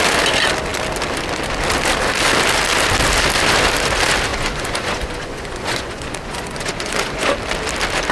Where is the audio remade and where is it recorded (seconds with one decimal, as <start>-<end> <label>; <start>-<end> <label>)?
0.0-4.3 recorded; 4.3-7.3 remade; 7.3-8.1 recorded

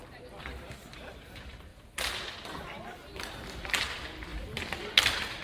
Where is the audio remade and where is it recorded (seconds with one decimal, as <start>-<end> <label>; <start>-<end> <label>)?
0.0-5.4 recorded

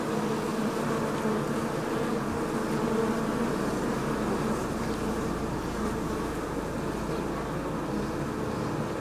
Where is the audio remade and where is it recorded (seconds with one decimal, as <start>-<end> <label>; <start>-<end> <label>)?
0.0-9.0 recorded

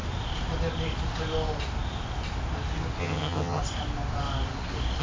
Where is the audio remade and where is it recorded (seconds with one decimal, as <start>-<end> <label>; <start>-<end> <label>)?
0.0-3.0 recorded; 3.0-3.6 remade; 3.6-5.0 recorded

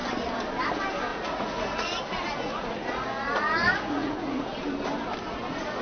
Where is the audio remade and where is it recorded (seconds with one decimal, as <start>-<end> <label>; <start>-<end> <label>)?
0.0-1.1 recorded; 1.1-4.6 remade; 4.6-5.8 recorded